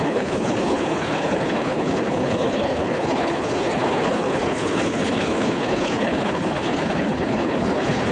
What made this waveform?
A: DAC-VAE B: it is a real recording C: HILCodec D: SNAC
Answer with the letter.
C